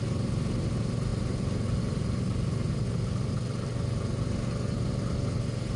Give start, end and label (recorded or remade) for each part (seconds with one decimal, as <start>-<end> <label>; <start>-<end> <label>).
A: 0.0-5.8 recorded